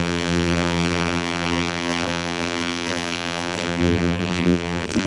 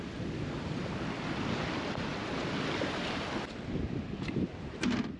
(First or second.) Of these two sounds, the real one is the second